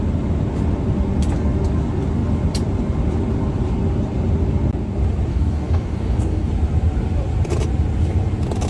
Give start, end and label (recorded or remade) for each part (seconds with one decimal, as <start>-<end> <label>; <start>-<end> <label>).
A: 0.0-5.3 recorded; 5.3-6.5 remade; 6.5-8.7 recorded